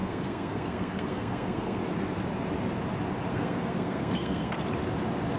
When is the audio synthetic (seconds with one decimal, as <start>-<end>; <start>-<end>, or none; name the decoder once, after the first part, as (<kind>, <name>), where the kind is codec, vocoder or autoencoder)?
0.0-1.8 (codec, SNAC); 3.3-4.6